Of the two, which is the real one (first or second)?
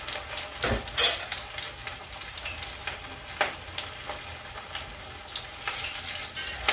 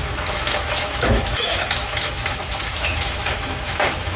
first